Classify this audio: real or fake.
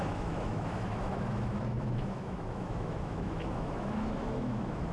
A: fake